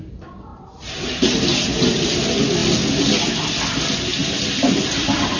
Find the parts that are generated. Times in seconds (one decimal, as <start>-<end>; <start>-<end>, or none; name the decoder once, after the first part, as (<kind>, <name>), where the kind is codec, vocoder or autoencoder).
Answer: 0.5-2.0 (vocoder, BigVGAN v2)